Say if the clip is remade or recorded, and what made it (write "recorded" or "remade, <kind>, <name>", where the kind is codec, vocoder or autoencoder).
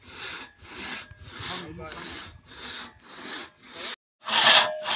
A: recorded